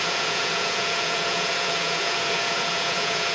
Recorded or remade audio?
remade